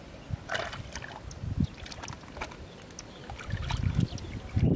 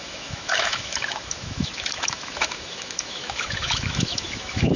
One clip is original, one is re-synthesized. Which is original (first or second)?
first